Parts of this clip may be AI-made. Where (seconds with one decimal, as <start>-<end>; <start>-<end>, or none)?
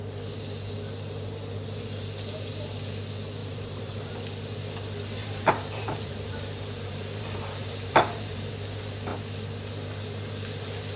3.4-4.1; 5.2-8.5